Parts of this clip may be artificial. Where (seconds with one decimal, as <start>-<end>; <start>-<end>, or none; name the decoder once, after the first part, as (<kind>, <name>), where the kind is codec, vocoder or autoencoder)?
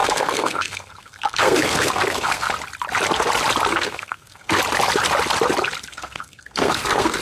0.0-2.5 (codec, SNAC); 3.7-4.6; 5.9-7.2